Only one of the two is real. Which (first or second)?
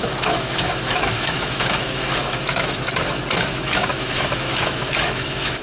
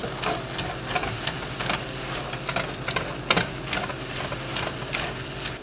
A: second